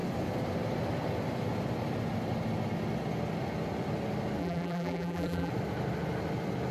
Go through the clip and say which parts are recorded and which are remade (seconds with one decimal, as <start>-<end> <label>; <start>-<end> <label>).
0.0-4.4 recorded; 4.4-5.5 remade; 5.5-6.7 recorded